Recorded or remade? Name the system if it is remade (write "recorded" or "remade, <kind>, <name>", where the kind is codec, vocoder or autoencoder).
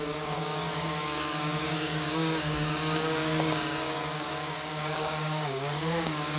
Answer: remade, codec, DAC